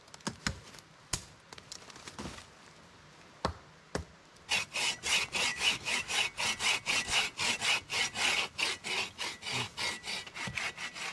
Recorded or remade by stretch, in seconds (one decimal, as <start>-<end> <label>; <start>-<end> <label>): 0.0-5.5 recorded; 5.5-6.2 remade; 6.2-11.1 recorded